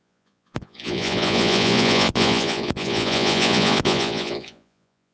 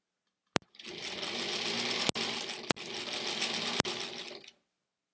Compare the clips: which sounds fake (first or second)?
first